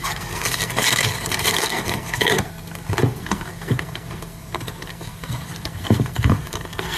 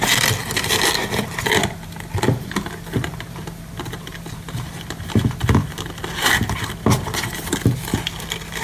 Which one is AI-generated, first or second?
first